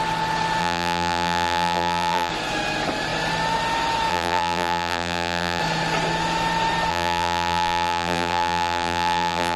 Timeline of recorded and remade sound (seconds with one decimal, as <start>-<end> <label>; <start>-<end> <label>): 0.0-0.6 recorded; 0.6-2.3 remade; 2.3-4.1 recorded; 4.1-5.6 remade; 5.6-6.9 recorded; 6.9-9.6 remade

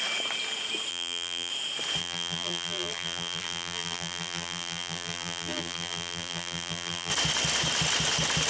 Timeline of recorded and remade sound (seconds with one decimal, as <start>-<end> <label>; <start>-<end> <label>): 0.0-0.9 recorded; 0.9-1.5 remade; 1.5-2.0 recorded; 2.0-7.1 remade; 7.1-8.5 recorded

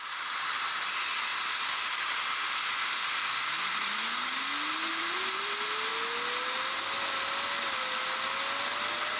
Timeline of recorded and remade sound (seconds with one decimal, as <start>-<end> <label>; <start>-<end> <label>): 0.0-4.9 recorded; 4.9-5.5 remade; 5.5-9.2 recorded